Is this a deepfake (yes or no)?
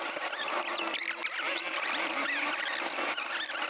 no